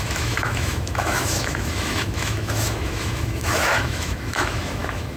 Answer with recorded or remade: remade